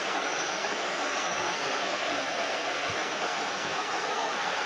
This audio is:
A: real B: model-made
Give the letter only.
B